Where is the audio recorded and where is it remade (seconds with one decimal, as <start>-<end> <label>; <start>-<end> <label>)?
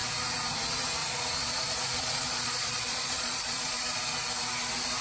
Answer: 0.0-1.0 recorded; 1.0-4.0 remade; 4.0-5.0 recorded